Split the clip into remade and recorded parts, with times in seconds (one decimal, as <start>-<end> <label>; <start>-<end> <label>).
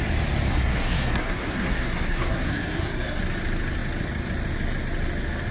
0.0-0.5 recorded; 0.5-3.2 remade; 3.2-5.5 recorded